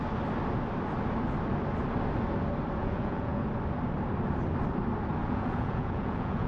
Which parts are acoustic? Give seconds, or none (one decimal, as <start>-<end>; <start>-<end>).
0.0-2.8; 3.4-5.2